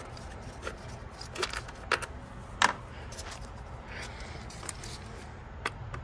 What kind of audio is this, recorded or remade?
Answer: recorded